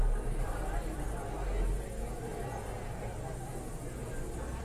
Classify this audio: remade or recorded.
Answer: recorded